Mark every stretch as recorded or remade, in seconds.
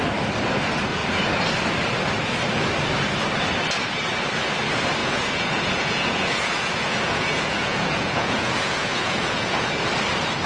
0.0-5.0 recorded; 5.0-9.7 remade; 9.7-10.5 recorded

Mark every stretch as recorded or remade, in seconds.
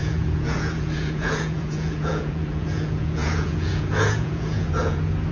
0.0-5.3 remade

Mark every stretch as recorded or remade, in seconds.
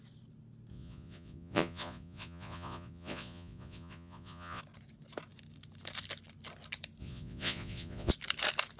0.0-0.7 recorded; 0.7-4.6 remade; 4.6-7.0 recorded; 7.0-8.1 remade; 8.1-8.8 recorded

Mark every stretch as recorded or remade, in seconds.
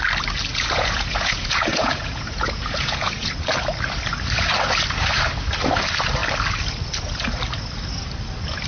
0.0-0.5 recorded; 0.5-3.3 remade; 3.3-8.7 recorded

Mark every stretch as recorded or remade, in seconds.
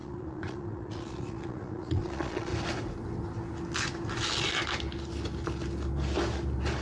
0.0-2.5 remade; 2.5-6.8 recorded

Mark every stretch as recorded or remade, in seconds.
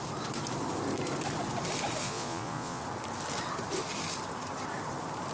0.0-2.0 recorded; 2.0-2.8 remade; 2.8-5.3 recorded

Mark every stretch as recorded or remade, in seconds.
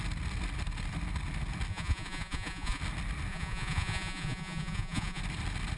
0.0-1.7 recorded; 1.7-2.8 remade; 2.8-3.3 recorded; 3.3-5.2 remade; 5.2-5.8 recorded